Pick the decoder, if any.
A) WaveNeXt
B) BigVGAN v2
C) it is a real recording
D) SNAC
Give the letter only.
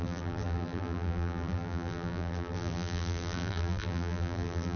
B